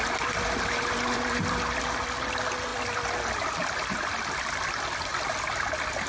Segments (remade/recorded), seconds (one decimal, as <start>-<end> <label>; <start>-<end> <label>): 0.0-6.1 recorded